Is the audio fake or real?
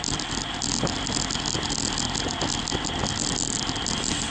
real